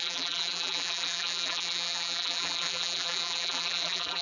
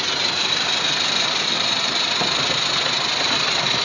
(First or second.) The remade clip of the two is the first